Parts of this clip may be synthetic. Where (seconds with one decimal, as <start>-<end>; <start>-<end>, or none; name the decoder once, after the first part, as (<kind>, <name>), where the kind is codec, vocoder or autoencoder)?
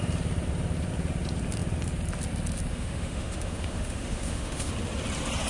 2.7-4.7 (autoencoder, DAC-VAE)